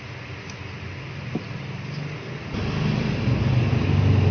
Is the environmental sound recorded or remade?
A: recorded